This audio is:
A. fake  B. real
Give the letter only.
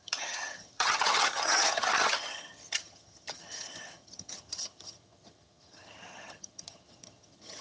A